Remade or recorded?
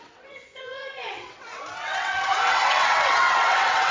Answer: remade